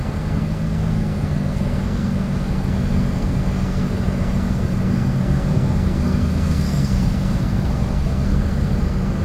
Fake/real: fake